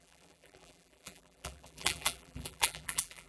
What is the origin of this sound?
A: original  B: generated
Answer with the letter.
B